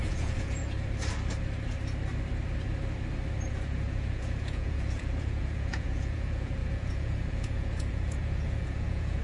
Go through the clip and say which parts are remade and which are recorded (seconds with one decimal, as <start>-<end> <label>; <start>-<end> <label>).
0.0-0.6 remade; 0.6-3.5 recorded; 3.5-9.2 remade